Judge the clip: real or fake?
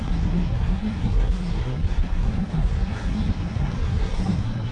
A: fake